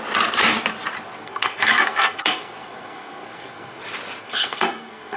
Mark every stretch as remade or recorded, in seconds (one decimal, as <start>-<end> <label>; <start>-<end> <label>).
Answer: 0.0-1.2 recorded; 1.2-3.8 remade; 3.8-4.2 recorded; 4.2-5.2 remade